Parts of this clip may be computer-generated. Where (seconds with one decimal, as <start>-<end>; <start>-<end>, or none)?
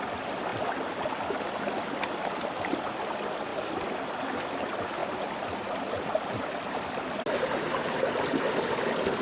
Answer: none